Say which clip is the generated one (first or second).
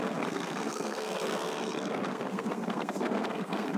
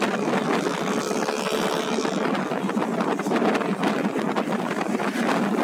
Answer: first